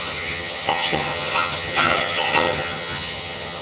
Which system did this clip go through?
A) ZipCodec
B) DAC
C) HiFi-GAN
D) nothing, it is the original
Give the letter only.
C